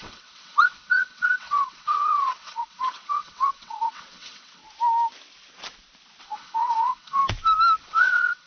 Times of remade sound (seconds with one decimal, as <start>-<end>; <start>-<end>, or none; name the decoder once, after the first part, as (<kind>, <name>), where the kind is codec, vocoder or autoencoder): 0.0-4.6 (vocoder, WaveNeXt); 6.2-7.2; 7.8-8.5